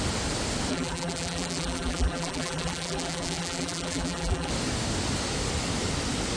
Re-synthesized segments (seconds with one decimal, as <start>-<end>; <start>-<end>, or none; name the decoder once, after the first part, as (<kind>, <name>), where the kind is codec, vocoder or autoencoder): 0.7-4.5 (vocoder, BigVGAN v2)